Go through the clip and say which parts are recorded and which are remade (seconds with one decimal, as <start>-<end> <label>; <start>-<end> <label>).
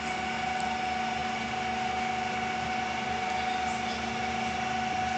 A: 0.0-5.2 recorded